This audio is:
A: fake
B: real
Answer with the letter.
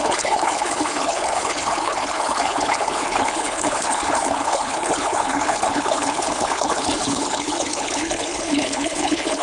A